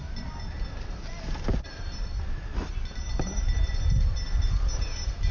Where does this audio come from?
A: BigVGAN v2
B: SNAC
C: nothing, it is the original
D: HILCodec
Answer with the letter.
C